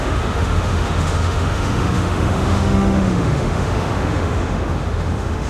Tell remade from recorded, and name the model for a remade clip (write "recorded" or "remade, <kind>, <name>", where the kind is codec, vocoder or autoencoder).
remade, autoencoder, DAC-VAE